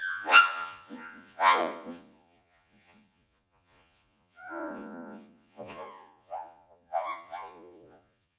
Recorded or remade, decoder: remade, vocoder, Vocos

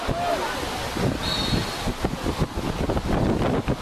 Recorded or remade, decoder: recorded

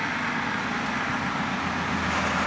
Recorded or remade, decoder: recorded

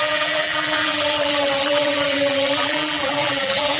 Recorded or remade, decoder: remade, vocoder, BigVGAN v2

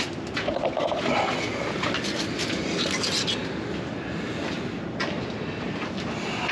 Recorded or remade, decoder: recorded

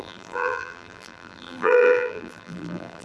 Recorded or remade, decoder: remade, vocoder, BigVGAN v2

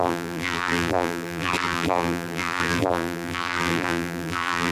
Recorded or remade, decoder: remade, vocoder, BigVGAN v2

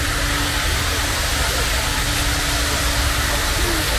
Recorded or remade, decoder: recorded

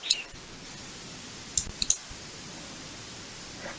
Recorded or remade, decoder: recorded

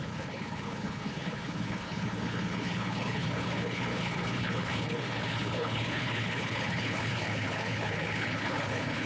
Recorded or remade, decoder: remade, codec, HILCodec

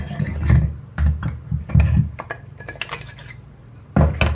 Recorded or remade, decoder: recorded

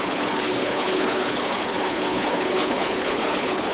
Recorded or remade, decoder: remade, codec, HILCodec